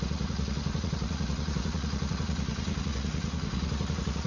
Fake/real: fake